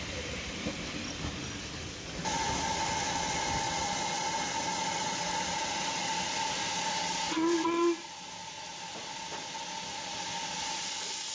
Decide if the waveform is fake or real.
real